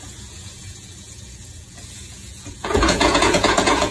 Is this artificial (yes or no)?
yes